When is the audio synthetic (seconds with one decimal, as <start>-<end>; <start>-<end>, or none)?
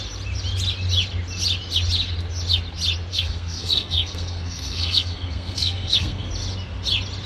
3.1-6.3